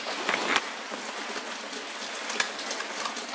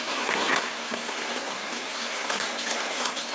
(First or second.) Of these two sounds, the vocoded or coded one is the second